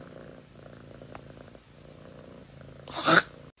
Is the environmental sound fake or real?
real